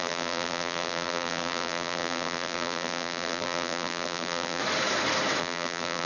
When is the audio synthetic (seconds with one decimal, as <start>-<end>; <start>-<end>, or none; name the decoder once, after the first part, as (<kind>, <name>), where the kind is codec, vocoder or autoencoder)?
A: 0.0-4.6 (vocoder, BigVGAN v2); 5.4-6.1